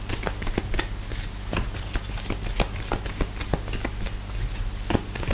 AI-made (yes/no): no